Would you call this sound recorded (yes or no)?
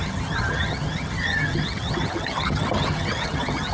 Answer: no